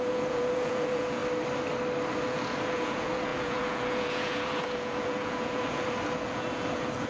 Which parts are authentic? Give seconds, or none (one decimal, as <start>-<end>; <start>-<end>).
1.2-2.2

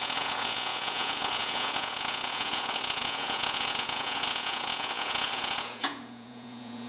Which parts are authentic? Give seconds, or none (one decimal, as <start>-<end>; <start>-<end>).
none

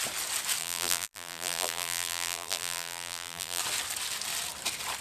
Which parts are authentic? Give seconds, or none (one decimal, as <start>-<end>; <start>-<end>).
0.0-0.6; 3.6-5.0

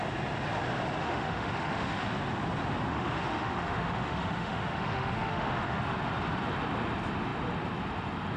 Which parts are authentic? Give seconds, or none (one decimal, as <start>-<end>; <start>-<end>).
0.0-1.0; 2.0-2.9; 5.8-8.4

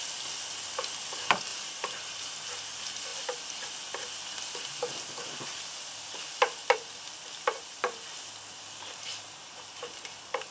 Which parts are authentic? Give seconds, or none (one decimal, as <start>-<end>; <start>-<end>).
0.0-1.5; 2.2-9.1; 9.8-10.5

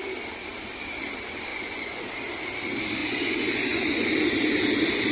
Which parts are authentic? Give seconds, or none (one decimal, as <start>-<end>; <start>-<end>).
0.0-1.5; 2.0-3.0; 4.1-5.1

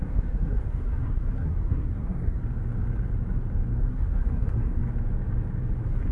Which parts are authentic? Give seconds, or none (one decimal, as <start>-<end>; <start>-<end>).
2.4-3.8; 4.8-6.1